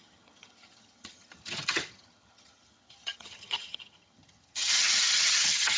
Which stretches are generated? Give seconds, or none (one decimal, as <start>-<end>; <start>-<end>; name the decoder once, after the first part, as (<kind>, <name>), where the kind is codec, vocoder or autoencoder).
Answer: 0.0-5.8 (vocoder, HiFi-GAN)

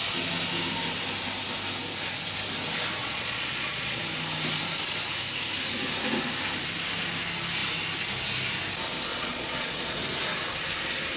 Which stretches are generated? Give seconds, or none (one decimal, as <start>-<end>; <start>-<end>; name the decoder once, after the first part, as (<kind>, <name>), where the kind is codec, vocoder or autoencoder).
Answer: 3.0-4.0 (vocoder, Vocos); 9.1-10.0

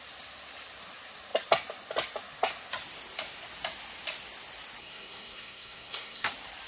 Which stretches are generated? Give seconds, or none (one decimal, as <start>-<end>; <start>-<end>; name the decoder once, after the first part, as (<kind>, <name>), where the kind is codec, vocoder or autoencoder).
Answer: 4.8-6.3 (codec, SNAC)